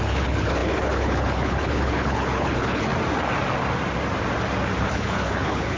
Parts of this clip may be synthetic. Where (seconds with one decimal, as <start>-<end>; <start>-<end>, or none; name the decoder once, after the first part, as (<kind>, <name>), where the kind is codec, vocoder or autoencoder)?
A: 0.0-2.9 (codec, HILCodec); 4.8-5.8